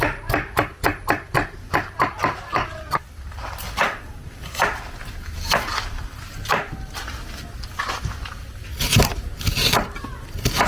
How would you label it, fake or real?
real